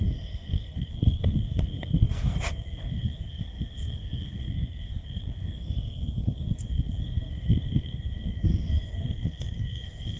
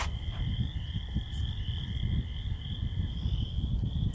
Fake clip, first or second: first